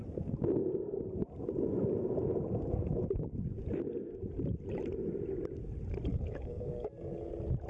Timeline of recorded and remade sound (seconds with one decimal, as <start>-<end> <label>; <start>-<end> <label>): 0.0-6.1 recorded; 6.1-7.3 remade; 7.3-7.7 recorded